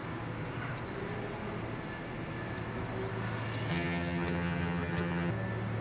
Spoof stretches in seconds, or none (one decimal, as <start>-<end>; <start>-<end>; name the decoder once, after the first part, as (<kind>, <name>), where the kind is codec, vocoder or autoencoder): 3.7-5.3 (vocoder, HiFi-GAN)